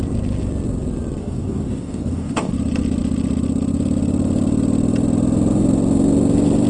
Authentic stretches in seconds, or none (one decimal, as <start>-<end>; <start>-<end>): 0.0-1.2; 2.5-6.7